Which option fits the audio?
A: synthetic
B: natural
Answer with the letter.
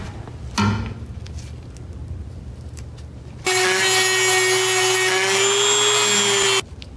B